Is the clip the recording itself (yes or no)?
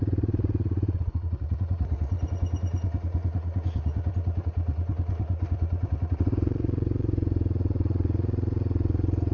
no